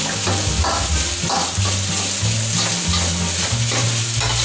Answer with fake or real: real